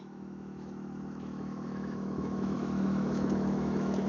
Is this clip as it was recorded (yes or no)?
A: no